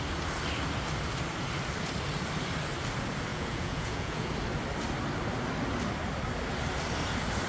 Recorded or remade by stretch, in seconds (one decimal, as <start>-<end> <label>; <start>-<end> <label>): 0.0-3.3 recorded; 3.3-4.3 remade; 4.3-7.5 recorded